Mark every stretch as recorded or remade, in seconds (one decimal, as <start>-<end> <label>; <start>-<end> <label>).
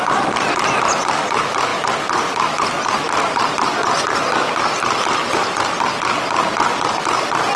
0.0-7.6 recorded